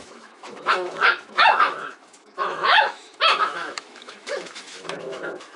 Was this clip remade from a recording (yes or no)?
yes